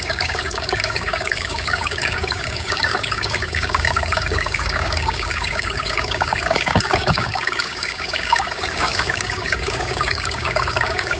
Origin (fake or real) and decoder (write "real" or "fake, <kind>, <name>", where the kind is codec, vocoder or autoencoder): fake, codec, DAC